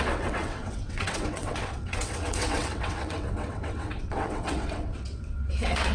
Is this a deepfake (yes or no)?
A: yes